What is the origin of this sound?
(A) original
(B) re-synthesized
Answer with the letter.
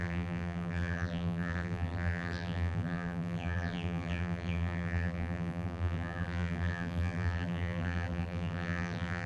B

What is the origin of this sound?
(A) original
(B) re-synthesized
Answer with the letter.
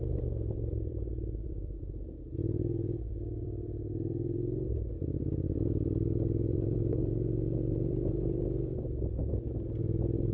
B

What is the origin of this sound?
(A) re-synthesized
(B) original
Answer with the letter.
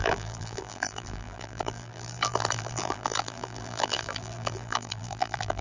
A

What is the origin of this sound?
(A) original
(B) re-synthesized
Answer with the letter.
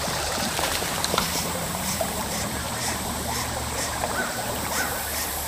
B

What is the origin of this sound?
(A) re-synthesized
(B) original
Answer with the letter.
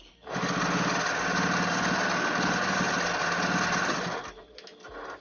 B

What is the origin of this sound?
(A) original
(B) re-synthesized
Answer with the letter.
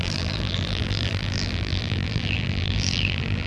B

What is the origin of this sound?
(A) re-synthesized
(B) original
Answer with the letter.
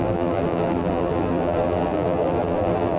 A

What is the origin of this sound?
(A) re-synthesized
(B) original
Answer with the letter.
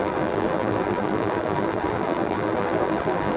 A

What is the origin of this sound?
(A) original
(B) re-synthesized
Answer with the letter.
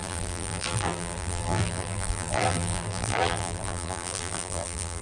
B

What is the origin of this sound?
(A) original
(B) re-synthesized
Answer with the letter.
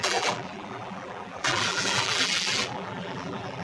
B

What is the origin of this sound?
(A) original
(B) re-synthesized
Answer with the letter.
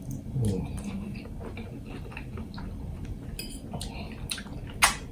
A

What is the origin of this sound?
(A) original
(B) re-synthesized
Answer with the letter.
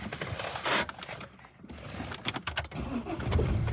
A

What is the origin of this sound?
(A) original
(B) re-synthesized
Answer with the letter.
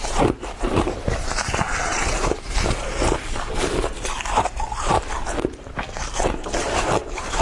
B